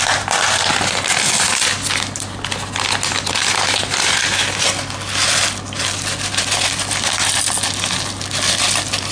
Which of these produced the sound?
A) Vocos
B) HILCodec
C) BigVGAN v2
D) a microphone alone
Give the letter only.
D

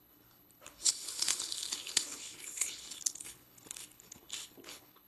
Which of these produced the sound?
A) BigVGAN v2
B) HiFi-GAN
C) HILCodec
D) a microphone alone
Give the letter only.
C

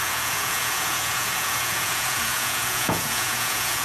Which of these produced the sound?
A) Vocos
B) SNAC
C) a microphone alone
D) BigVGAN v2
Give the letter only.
A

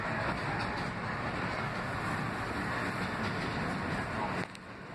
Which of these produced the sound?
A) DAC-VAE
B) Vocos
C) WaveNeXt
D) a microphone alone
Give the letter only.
D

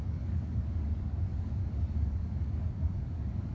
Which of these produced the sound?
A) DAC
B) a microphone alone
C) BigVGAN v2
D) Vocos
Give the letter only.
A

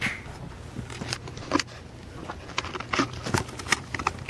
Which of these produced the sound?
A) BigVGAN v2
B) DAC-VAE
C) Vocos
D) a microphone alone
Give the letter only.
D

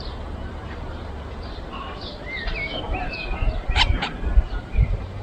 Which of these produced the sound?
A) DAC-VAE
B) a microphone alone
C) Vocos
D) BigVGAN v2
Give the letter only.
D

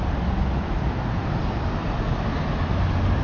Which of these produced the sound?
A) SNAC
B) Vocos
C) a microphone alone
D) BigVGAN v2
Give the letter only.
C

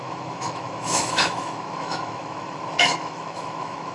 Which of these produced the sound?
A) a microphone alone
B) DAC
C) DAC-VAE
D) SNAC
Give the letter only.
C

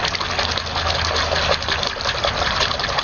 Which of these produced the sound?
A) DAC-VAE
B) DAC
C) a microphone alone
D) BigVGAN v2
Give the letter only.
C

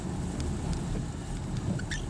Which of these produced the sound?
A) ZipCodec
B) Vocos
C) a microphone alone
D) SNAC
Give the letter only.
C